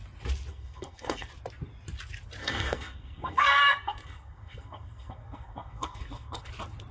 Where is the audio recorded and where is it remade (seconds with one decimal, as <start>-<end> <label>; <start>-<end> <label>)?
0.0-0.5 recorded; 0.5-1.3 remade; 1.3-2.4 recorded; 2.4-6.5 remade; 6.5-6.9 recorded